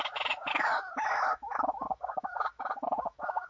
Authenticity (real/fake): fake